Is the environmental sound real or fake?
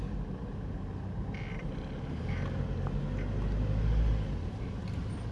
real